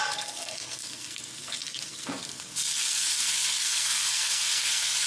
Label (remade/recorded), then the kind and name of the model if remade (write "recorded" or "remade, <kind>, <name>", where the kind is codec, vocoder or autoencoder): remade, codec, SNAC